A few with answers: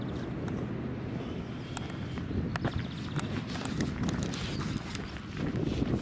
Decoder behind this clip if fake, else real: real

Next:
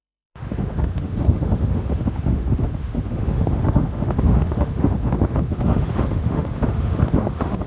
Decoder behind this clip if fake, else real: fake, autoencoder, DAC-VAE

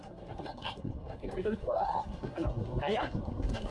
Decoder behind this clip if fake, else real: fake, codec, SNAC